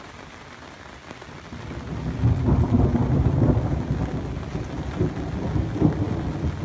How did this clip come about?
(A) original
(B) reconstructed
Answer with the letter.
A